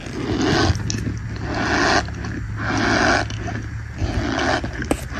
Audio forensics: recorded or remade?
recorded